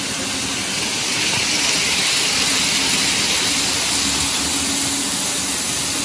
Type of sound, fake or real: real